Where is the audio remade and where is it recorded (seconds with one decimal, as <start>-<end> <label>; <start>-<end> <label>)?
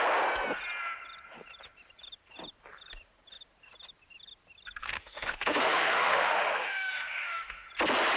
0.0-4.8 recorded; 4.8-7.7 remade; 7.7-8.2 recorded